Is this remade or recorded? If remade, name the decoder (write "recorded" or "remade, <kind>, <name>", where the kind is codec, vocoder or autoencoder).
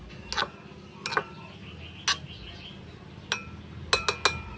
recorded